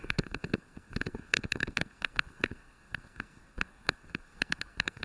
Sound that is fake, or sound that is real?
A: fake